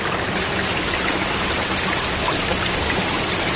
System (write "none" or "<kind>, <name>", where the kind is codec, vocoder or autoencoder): none